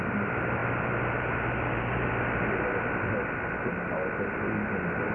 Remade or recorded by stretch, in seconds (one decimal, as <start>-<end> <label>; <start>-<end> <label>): 0.0-5.1 recorded